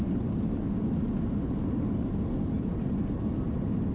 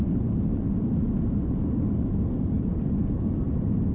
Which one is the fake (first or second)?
second